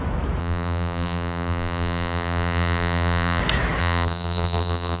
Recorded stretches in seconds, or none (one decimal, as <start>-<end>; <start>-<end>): 0.0-0.4; 3.4-3.8